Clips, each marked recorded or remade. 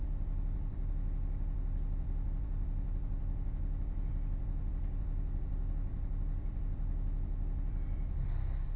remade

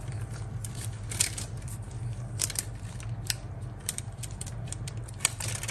remade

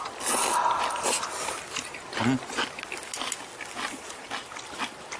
recorded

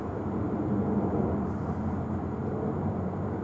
recorded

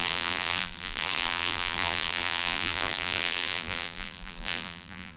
remade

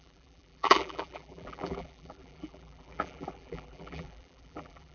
remade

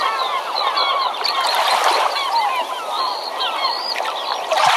remade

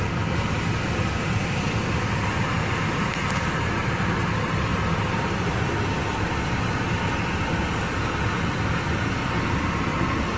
recorded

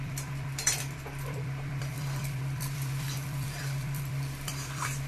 remade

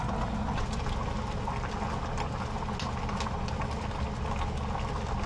recorded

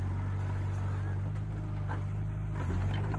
recorded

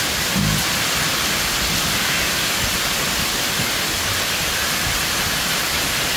recorded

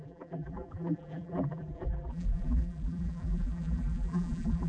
remade